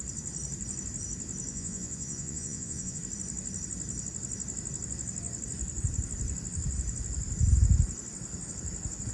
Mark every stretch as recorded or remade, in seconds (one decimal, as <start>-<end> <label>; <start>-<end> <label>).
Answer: 0.0-1.5 recorded; 1.5-3.0 remade; 3.0-9.1 recorded